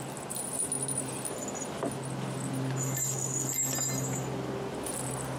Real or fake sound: real